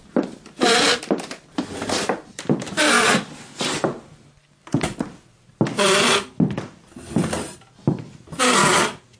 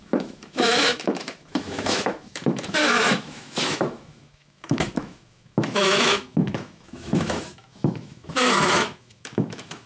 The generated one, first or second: second